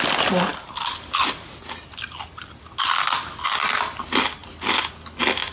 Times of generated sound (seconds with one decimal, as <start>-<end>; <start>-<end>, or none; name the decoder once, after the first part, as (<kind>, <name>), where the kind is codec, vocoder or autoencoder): none